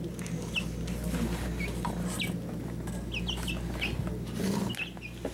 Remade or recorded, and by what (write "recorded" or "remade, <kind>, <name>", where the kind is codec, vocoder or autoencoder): recorded